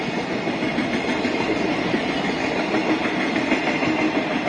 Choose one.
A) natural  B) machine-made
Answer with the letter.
A